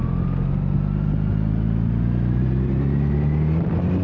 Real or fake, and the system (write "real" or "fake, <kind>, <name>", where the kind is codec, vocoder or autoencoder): real